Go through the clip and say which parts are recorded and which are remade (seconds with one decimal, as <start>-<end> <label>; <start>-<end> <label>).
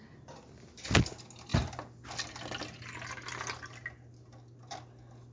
0.0-5.3 recorded